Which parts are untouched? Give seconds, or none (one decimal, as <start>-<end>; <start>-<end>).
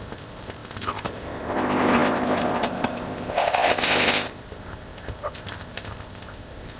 none